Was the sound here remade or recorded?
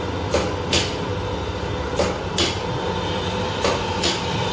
recorded